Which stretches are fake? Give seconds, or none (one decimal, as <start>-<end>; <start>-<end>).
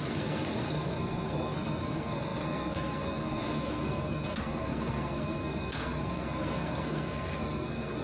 0.0-8.0